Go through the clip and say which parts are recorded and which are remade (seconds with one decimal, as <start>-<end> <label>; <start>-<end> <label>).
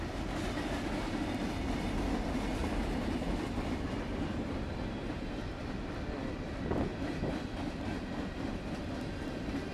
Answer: 0.0-2.6 recorded; 2.6-4.8 remade; 4.8-6.9 recorded; 6.9-7.5 remade; 7.5-9.7 recorded